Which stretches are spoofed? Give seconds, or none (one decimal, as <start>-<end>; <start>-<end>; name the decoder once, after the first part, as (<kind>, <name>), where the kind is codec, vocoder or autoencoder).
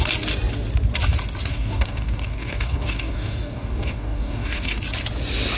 1.5-4.8 (codec, DAC)